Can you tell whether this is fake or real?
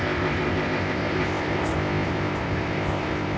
fake